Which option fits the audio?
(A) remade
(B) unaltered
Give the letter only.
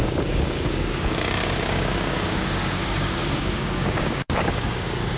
A